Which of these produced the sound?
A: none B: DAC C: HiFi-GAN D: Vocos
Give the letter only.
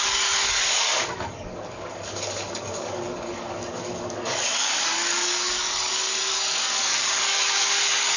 B